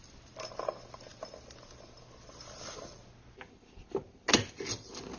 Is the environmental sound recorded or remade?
recorded